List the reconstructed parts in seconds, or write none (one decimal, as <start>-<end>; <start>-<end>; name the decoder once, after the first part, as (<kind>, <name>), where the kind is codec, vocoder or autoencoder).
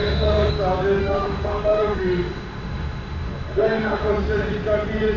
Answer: 0.0-0.5 (autoencoder, DAC-VAE); 1.0-4.1